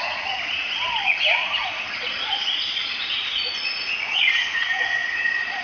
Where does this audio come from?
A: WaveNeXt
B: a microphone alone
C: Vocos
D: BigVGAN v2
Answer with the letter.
C